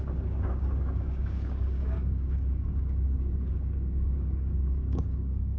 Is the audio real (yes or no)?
no